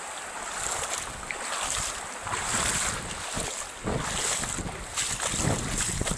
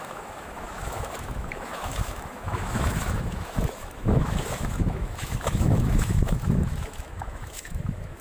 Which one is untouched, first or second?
first